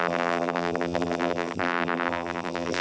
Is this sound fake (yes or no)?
yes